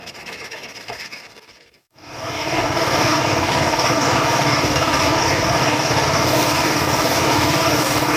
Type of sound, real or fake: fake